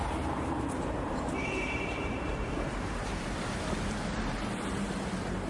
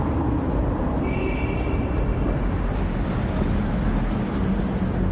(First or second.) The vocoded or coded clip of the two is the first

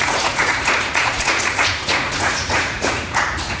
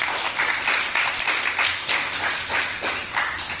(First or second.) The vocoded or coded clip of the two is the first